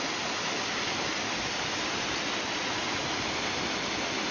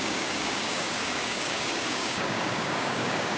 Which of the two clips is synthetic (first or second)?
second